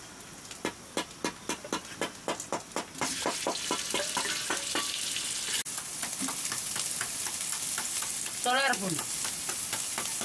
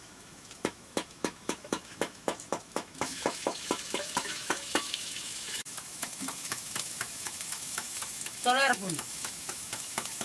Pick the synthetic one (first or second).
second